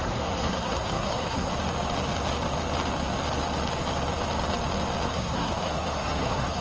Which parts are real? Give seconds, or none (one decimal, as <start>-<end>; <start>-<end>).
1.5-5.1